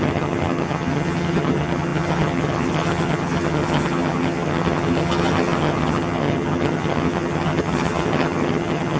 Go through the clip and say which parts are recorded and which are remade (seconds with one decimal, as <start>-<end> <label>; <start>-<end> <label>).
0.0-9.0 remade

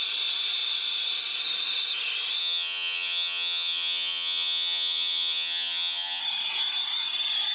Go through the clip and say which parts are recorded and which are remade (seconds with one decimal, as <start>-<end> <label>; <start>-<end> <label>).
0.0-2.4 recorded; 2.4-6.2 remade; 6.2-7.5 recorded

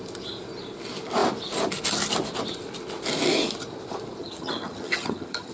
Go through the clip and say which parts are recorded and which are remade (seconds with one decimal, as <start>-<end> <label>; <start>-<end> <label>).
0.0-4.2 recorded; 4.2-5.5 remade

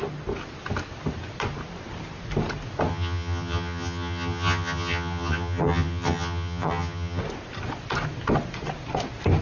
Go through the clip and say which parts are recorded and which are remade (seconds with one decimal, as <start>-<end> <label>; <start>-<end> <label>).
0.0-2.9 recorded; 2.9-7.2 remade; 7.2-9.4 recorded

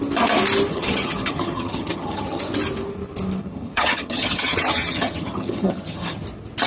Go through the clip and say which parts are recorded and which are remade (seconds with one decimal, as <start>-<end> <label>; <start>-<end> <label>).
0.0-0.7 recorded; 0.7-2.4 remade; 2.4-3.4 recorded; 3.4-6.2 remade; 6.2-6.7 recorded